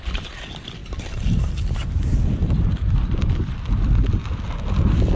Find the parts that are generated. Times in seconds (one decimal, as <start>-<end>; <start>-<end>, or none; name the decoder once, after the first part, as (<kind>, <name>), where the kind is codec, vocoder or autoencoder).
none